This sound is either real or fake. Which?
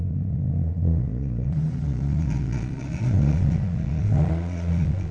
fake